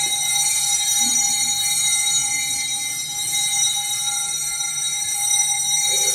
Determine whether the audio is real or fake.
real